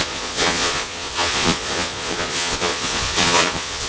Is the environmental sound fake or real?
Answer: fake